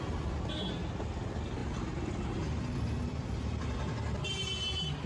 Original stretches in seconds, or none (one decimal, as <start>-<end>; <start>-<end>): 0.0-5.1